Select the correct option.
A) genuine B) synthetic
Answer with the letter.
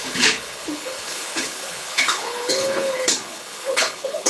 B